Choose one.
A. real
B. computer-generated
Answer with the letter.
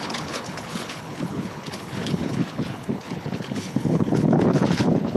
B